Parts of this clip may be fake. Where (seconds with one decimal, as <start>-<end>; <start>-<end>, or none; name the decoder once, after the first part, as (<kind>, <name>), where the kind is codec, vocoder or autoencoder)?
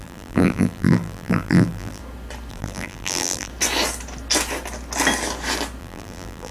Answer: 0.0-2.0 (vocoder, BigVGAN v2); 2.5-3.5; 5.8-6.5